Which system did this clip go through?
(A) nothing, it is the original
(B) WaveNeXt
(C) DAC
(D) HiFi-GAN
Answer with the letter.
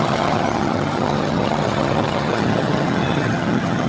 D